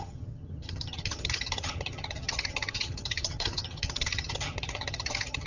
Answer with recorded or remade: remade